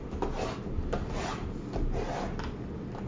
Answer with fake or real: real